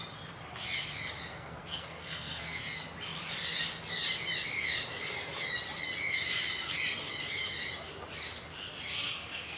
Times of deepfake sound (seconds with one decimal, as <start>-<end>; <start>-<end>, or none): 1.3-2.6; 8.9-9.6